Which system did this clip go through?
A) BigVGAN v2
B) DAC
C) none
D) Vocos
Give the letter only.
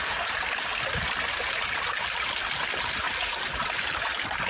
C